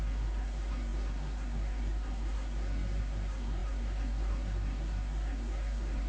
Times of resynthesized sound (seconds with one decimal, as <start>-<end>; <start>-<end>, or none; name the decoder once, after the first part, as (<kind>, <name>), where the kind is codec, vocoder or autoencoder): 0.0-6.1 (codec, SNAC)